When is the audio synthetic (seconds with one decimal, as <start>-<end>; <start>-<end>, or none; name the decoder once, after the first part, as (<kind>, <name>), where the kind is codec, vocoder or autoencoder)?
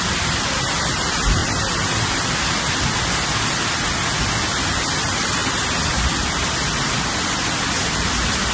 1.4-2.3 (vocoder, BigVGAN v2)